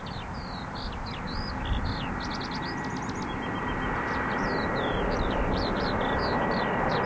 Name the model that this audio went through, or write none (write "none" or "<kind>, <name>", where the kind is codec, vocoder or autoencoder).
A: none